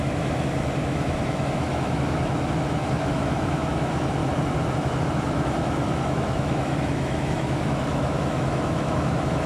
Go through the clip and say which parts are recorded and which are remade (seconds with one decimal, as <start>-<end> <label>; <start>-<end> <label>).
0.0-4.2 remade; 4.2-4.8 recorded; 4.8-9.5 remade